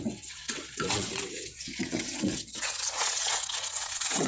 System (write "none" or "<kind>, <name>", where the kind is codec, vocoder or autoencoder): vocoder, WaveNeXt